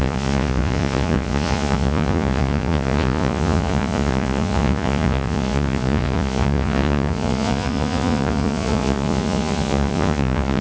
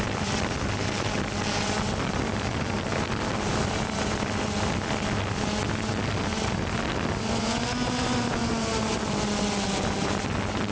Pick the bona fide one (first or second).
second